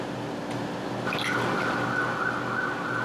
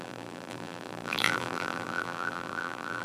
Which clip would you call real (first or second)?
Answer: first